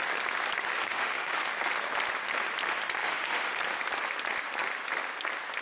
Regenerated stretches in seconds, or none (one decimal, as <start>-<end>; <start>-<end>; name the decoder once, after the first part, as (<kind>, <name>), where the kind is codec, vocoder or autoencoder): 0.8-1.5 (autoencoder, DAC-VAE); 3.0-3.6